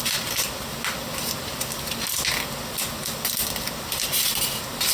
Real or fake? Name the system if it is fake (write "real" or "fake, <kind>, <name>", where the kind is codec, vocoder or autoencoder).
real